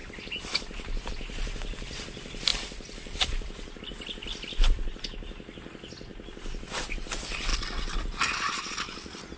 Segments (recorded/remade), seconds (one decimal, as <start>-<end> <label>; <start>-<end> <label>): 0.0-1.1 remade; 1.1-2.5 recorded; 2.5-3.8 remade; 3.8-6.1 recorded; 6.1-7.1 remade; 7.1-9.4 recorded